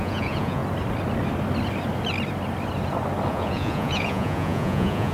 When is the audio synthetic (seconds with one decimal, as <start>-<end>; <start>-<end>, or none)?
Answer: 0.0-0.6; 3.3-5.1